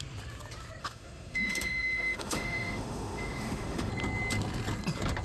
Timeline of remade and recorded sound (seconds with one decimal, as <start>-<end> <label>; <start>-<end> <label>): 0.0-0.8 recorded; 0.8-3.9 remade; 3.9-5.2 recorded